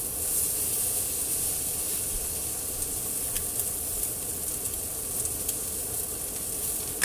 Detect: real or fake real